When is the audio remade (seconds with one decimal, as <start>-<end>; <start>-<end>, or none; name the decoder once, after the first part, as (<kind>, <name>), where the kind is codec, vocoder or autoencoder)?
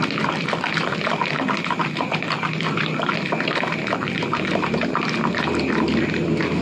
0.0-6.6 (vocoder, BigVGAN v2)